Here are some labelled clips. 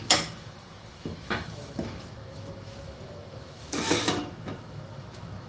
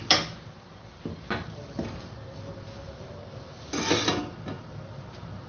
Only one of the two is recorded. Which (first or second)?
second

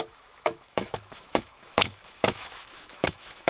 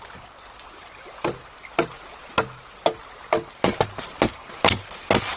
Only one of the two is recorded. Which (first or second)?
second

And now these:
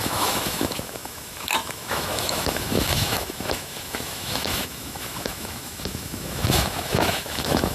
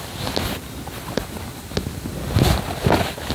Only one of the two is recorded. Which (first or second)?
second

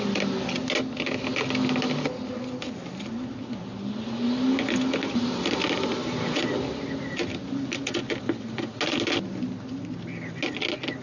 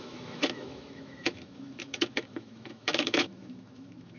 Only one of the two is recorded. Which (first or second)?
first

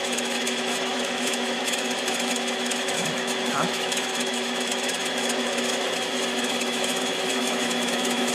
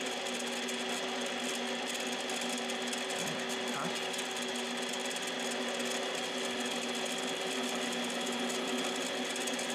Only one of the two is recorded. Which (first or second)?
second